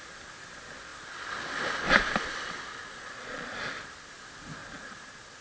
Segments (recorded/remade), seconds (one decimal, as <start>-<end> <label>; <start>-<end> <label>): 0.0-2.8 recorded; 2.8-3.6 remade; 3.6-4.6 recorded; 4.6-5.4 remade